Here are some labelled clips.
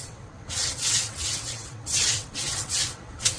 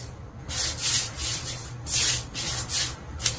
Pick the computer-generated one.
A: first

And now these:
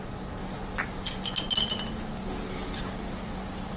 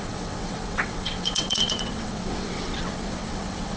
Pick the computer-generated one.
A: second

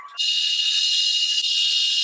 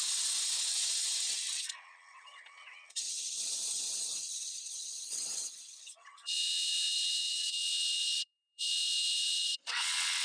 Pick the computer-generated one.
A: second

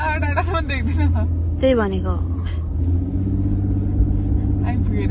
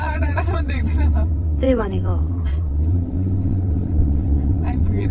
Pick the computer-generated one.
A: second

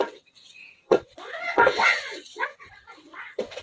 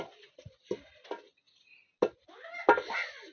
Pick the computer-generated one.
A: first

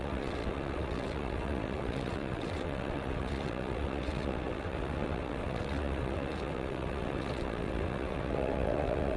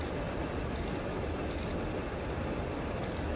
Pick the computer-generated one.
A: first